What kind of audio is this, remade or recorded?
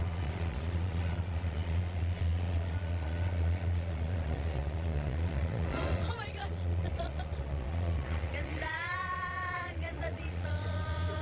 remade